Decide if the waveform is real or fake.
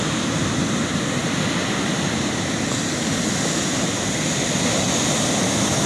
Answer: real